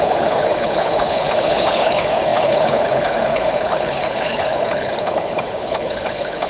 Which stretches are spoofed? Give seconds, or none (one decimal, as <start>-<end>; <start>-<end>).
0.0-6.5